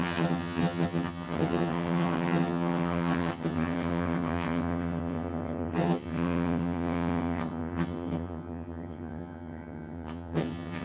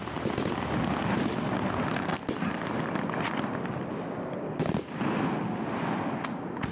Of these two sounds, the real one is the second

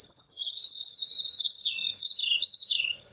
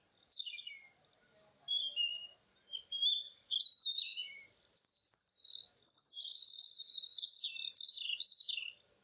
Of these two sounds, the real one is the second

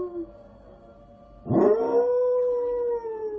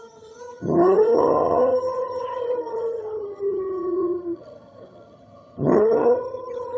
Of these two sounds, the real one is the first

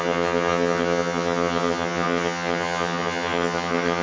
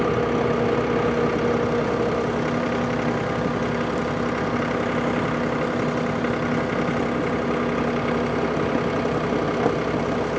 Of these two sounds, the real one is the second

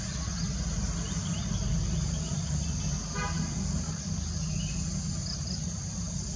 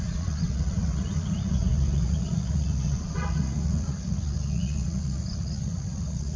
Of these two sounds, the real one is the first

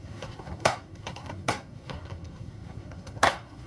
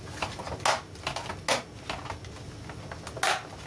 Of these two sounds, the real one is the second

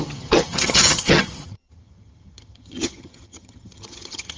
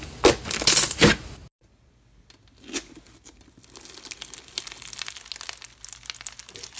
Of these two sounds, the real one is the second